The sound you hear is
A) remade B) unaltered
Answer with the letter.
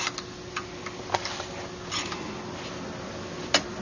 B